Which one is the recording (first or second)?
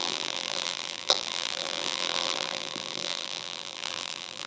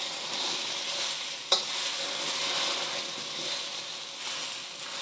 second